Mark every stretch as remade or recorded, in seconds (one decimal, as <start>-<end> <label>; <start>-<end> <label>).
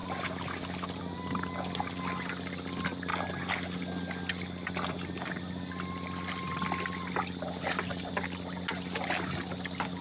0.0-10.0 recorded